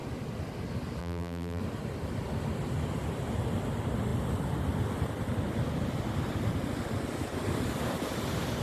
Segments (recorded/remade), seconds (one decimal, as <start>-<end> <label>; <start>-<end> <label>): 0.0-1.0 recorded; 1.0-1.6 remade; 1.6-8.6 recorded